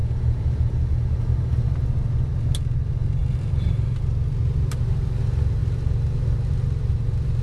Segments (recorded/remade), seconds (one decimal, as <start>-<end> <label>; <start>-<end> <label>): 0.0-3.2 recorded; 3.2-4.0 remade; 4.0-7.4 recorded